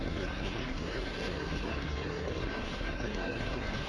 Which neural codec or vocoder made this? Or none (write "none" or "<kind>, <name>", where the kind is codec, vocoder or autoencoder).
codec, SNAC